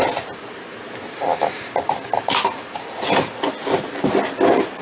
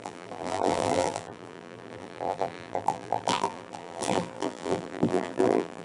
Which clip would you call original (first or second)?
first